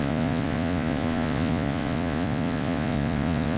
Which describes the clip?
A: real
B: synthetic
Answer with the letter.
B